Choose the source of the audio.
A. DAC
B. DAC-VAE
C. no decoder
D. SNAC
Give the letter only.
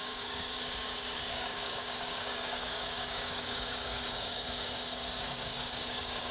A